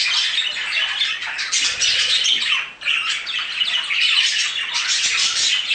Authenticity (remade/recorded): recorded